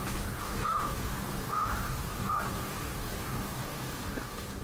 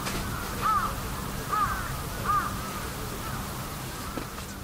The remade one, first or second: first